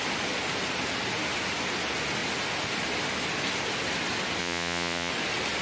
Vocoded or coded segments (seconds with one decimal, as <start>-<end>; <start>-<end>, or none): 4.4-5.1